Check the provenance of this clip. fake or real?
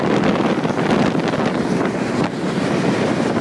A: real